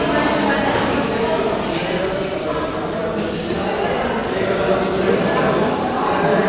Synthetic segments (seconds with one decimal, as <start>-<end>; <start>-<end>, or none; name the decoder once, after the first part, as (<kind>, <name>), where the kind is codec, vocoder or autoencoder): none